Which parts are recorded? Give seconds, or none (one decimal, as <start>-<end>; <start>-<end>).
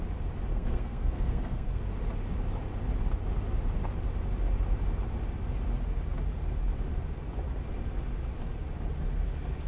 0.0-0.5; 1.8-9.7